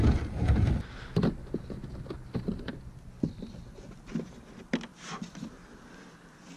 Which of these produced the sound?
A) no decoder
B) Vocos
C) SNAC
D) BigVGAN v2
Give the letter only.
A